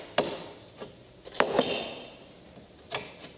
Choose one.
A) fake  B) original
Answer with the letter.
B